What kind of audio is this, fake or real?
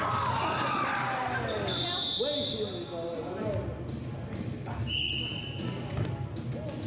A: real